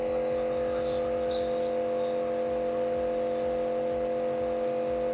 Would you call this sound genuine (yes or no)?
yes